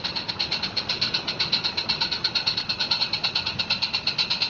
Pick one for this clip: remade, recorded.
recorded